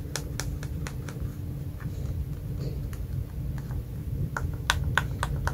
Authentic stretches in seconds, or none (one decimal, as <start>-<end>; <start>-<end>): 0.0-5.5